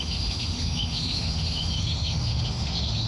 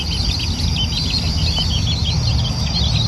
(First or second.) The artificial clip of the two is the first